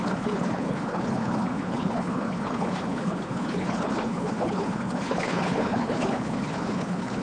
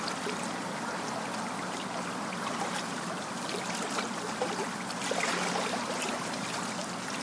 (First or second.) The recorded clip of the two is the second